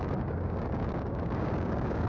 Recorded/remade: remade